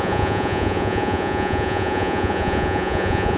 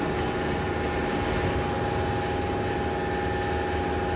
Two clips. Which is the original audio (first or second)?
second